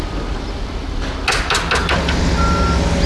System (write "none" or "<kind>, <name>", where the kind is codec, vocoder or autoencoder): none